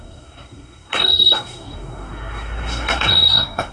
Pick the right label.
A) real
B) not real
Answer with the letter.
B